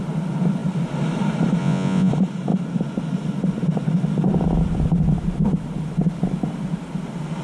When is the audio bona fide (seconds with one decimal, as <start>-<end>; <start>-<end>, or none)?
0.0-1.6; 2.1-7.4